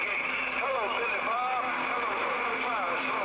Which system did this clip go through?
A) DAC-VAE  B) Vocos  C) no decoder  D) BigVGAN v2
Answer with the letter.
D